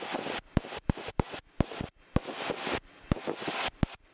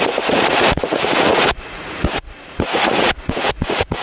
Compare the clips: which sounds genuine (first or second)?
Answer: first